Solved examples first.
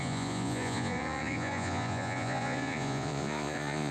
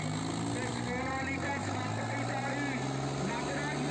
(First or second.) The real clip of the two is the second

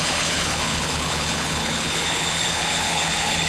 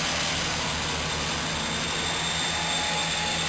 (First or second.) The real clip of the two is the second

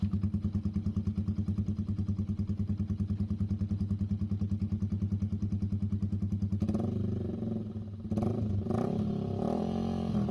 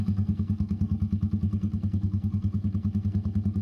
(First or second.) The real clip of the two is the first